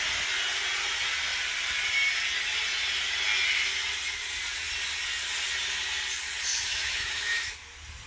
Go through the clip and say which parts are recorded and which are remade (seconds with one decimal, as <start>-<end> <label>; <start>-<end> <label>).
0.0-6.5 recorded; 6.5-7.5 remade; 7.5-8.1 recorded